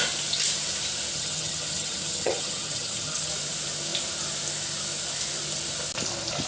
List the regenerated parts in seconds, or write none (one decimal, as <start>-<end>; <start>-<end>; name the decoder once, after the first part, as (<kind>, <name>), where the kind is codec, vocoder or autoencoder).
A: 1.1-3.3 (vocoder, HiFi-GAN)